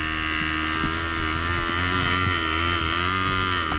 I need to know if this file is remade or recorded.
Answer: recorded